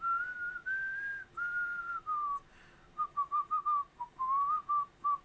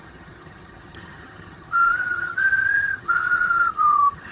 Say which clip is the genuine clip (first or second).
first